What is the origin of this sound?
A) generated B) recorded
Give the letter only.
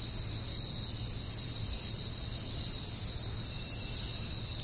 B